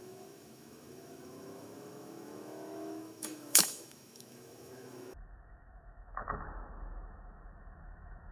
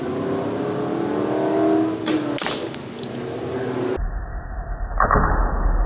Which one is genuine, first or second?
second